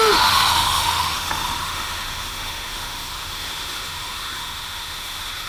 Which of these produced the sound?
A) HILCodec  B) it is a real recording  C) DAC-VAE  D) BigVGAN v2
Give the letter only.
C